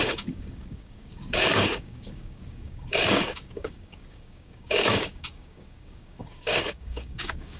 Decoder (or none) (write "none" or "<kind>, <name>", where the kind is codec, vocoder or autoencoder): codec, DAC